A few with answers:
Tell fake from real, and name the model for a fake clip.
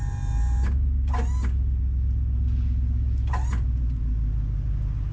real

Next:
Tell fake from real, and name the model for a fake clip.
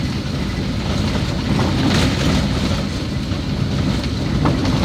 real